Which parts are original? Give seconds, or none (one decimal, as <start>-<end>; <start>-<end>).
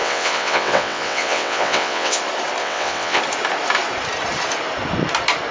2.2-2.6; 3.2-5.5